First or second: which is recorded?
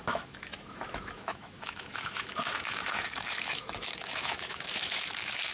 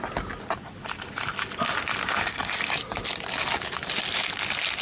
second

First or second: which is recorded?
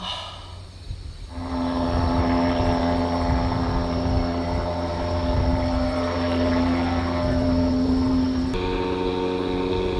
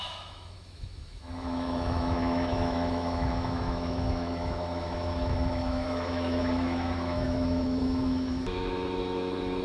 first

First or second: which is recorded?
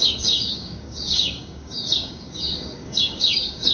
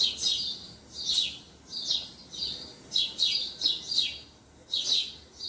second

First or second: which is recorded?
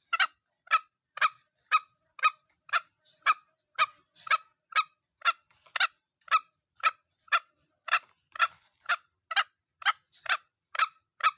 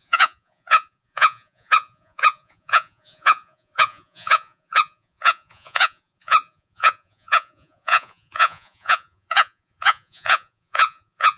first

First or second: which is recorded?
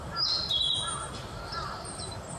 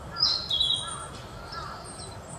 second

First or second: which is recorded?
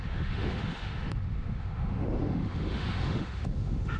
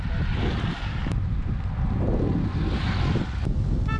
second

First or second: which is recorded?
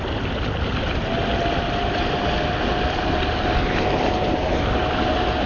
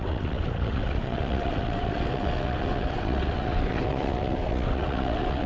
first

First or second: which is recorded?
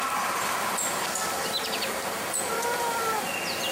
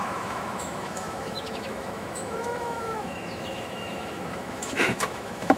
first